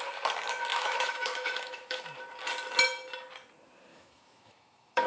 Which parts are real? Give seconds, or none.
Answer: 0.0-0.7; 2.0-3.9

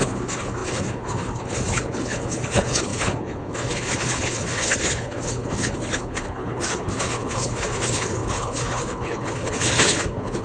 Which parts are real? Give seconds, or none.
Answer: none